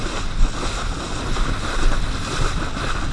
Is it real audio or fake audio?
real